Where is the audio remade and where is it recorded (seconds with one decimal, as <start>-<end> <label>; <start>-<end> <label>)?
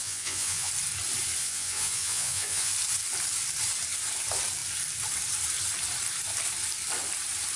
0.0-0.7 remade; 0.7-1.4 recorded; 1.4-2.7 remade; 2.7-7.6 recorded